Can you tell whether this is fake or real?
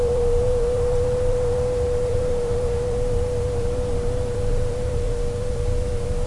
fake